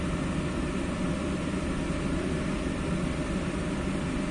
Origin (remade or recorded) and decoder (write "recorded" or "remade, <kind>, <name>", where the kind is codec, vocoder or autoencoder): recorded